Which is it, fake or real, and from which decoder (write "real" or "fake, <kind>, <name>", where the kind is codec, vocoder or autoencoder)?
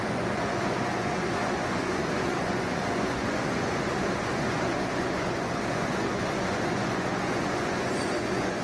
fake, vocoder, Vocos